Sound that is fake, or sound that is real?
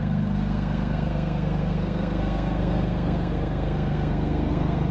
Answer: fake